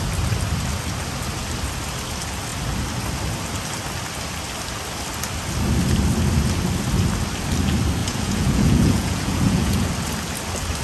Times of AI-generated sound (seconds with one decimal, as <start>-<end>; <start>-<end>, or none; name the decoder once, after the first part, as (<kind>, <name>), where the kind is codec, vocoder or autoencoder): 8.0-9.9 (vocoder, Vocos)